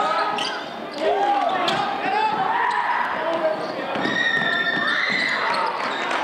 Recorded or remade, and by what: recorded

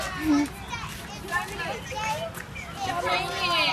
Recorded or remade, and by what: recorded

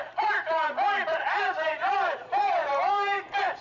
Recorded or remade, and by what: recorded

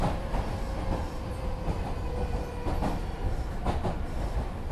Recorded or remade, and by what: recorded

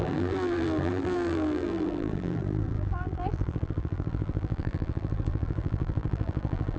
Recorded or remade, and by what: remade, vocoder, BigVGAN v2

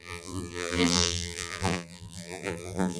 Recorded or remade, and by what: remade, vocoder, BigVGAN v2